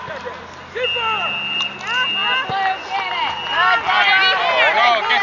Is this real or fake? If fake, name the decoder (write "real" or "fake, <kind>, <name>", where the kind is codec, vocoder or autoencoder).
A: real